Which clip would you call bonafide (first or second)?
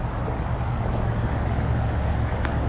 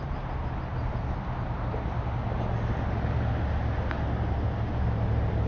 second